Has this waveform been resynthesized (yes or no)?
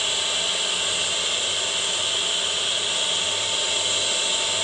no